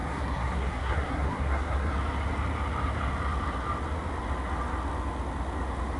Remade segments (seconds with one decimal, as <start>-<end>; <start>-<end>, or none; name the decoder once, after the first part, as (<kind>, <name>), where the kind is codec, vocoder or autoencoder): 0.0-1.9 (codec, SNAC)